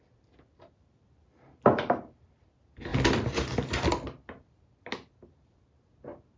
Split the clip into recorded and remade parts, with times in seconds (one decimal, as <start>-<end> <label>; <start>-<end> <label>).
0.0-6.4 recorded